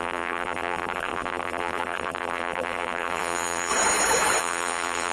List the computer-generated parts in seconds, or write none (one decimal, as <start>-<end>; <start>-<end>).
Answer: 0.0-3.7; 4.4-5.1